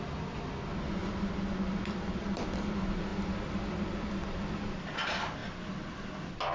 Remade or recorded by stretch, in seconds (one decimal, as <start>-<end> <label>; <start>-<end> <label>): 0.0-3.1 recorded; 3.1-4.8 remade; 4.8-6.5 recorded